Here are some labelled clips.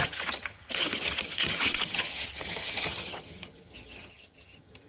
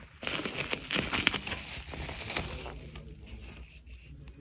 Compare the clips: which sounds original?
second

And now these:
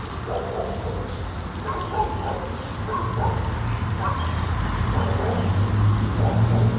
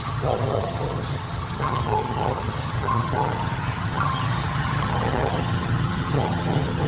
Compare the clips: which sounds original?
first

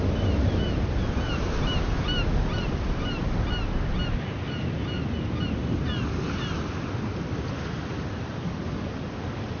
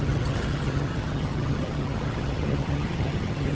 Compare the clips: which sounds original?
first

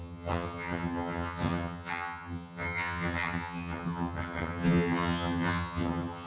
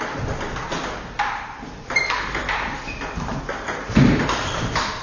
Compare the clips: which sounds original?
second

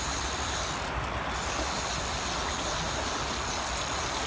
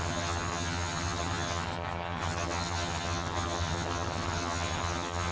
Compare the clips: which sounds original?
first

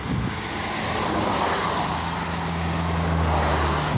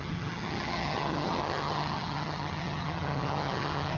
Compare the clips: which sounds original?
first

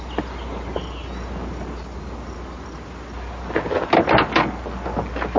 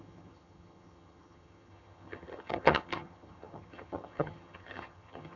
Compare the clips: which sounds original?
first